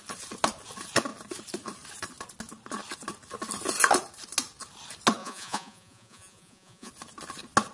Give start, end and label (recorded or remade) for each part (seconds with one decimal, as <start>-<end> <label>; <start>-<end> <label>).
0.0-5.2 recorded; 5.2-6.9 remade; 6.9-7.7 recorded